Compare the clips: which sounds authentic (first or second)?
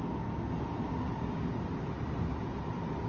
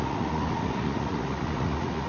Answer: first